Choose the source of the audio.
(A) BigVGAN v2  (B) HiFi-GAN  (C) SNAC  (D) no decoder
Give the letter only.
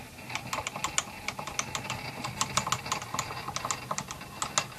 D